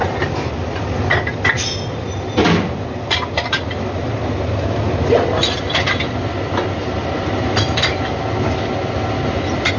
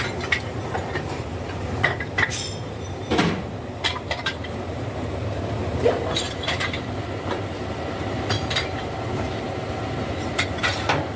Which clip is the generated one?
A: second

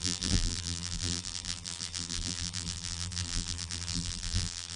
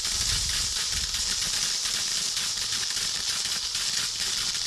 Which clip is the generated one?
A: first